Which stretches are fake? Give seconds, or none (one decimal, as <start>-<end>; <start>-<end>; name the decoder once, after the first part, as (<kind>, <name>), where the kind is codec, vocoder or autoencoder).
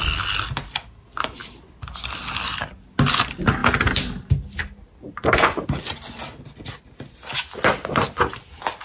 none